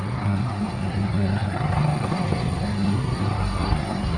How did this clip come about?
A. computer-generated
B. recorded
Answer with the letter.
A